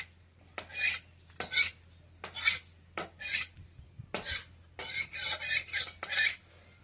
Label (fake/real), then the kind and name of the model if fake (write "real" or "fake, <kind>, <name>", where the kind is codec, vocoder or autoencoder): real